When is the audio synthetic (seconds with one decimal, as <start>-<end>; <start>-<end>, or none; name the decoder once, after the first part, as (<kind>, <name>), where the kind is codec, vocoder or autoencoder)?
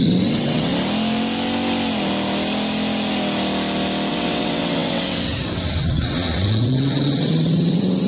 0.0-0.7 (vocoder, WaveNeXt); 4.1-8.1